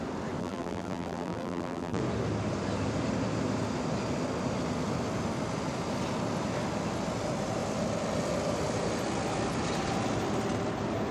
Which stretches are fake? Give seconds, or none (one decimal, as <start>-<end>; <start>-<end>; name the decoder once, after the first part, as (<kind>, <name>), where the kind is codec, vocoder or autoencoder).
0.4-2.0 (vocoder, BigVGAN v2)